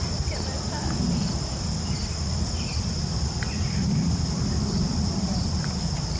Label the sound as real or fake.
real